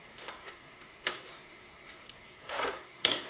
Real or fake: fake